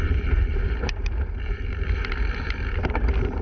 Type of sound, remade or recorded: remade